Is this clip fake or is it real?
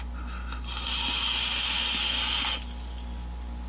real